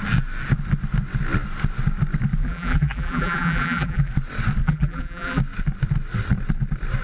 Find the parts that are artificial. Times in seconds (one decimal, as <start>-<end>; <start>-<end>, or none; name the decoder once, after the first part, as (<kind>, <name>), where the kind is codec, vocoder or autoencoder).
2.4-4.1 (vocoder, BigVGAN v2); 4.6-5.4